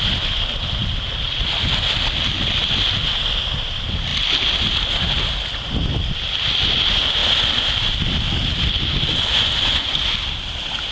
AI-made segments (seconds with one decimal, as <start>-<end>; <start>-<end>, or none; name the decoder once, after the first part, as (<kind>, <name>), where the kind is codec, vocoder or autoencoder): 9.3-10.0 (vocoder, Vocos)